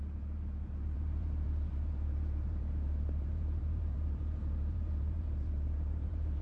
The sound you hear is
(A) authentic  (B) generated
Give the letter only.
B